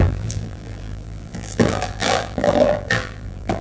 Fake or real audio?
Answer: fake